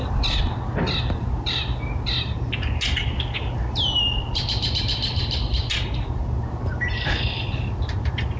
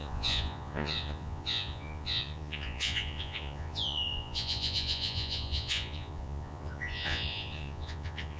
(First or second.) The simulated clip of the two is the second